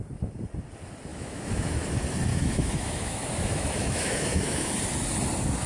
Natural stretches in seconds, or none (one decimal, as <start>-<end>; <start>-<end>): 0.0-1.1; 1.7-2.3; 4.7-5.7

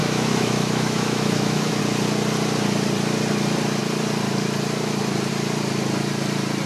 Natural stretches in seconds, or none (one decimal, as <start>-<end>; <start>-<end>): 1.8-6.7